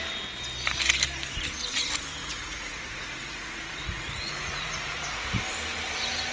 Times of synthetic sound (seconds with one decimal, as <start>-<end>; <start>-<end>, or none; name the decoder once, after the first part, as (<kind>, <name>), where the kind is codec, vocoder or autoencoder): 2.2-5.4 (vocoder, Vocos)